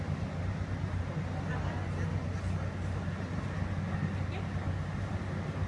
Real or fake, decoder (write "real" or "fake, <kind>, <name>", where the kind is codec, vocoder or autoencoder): real